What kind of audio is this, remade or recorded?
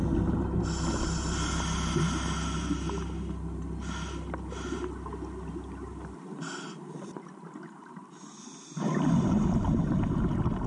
recorded